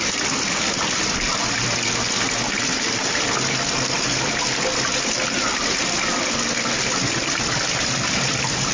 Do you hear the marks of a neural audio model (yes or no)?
no